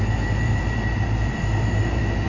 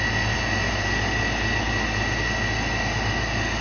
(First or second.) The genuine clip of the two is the second